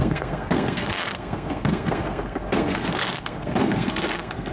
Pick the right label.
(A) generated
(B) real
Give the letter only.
A